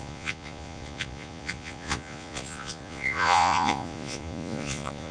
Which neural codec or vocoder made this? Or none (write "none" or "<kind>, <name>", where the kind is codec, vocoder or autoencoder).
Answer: vocoder, Vocos